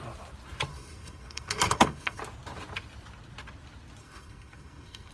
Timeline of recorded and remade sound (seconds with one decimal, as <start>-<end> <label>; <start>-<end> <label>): 0.0-0.7 recorded; 0.7-2.2 remade; 2.2-4.0 recorded; 4.0-5.1 remade